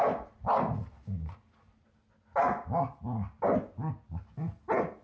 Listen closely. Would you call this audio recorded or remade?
recorded